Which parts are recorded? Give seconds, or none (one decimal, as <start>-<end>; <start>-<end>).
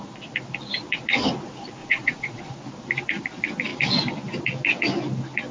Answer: 0.0-1.8; 2.5-5.5